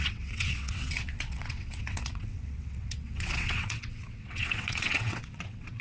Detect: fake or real fake